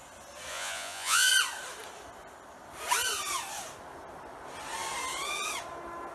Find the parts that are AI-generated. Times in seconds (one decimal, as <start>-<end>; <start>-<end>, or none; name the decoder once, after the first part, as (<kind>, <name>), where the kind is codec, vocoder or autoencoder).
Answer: 0.5-1.3 (vocoder, Vocos)